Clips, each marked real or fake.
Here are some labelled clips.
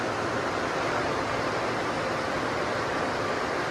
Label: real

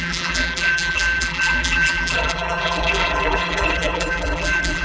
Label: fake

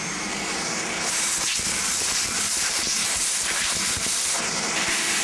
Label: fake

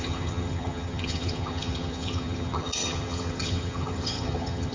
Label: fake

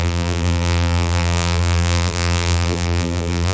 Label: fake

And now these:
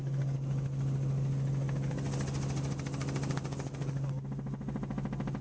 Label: real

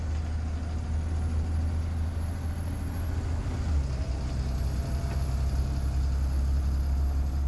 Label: real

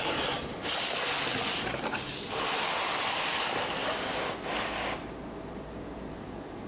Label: real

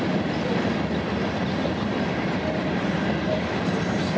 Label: real